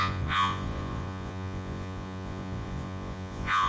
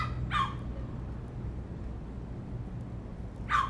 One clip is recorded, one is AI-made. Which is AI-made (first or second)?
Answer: first